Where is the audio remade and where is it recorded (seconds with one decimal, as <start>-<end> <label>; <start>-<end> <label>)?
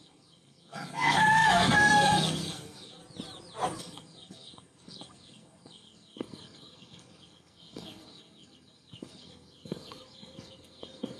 0.0-3.0 remade; 3.0-3.8 recorded; 3.8-11.2 remade